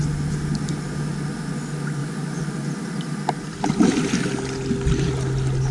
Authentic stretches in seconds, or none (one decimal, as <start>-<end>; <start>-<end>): 0.0-5.7